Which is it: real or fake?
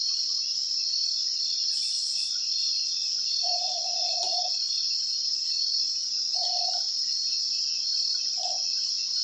real